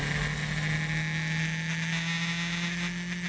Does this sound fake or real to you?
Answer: real